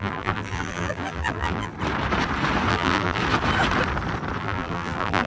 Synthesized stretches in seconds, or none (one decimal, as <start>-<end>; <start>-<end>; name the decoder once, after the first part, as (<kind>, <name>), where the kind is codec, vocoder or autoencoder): 0.0-1.7 (vocoder, BigVGAN v2); 2.7-3.2; 4.4-5.3